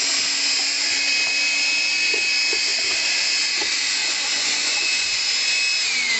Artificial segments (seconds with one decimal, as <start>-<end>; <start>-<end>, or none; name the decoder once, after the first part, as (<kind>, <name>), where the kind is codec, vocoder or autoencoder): 4.0-5.6 (vocoder, Vocos)